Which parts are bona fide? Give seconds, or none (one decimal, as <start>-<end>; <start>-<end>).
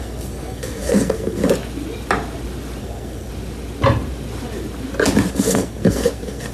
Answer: 1.4-2.8; 3.3-5.3